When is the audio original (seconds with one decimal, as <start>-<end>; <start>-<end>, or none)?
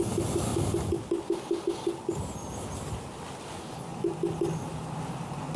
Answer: 0.0-5.6